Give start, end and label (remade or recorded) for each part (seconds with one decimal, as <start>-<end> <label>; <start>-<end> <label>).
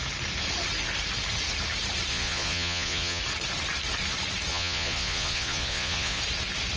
0.0-2.1 recorded; 2.1-3.2 remade; 3.2-4.5 recorded; 4.5-6.2 remade; 6.2-6.8 recorded